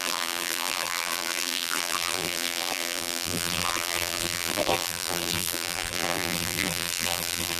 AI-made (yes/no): yes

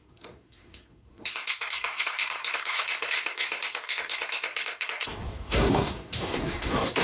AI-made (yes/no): yes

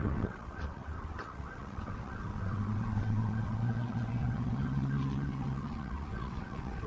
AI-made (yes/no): yes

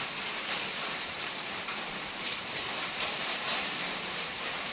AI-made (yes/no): yes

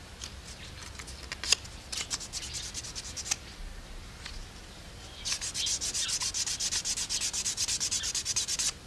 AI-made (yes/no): no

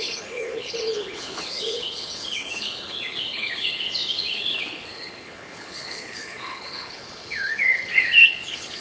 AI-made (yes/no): yes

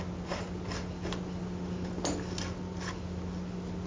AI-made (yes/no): no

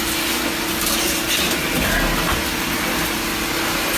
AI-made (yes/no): no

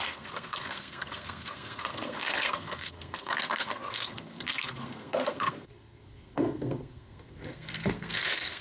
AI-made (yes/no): yes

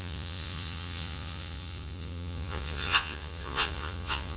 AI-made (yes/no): yes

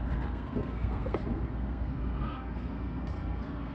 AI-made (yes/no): yes